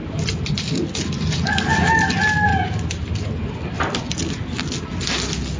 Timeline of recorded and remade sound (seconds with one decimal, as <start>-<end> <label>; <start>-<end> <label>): 0.0-5.6 recorded